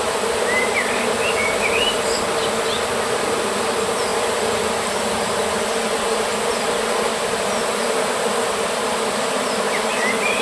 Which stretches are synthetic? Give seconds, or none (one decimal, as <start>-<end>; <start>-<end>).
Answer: none